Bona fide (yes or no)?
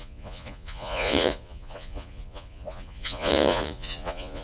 no